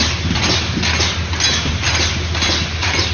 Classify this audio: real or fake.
real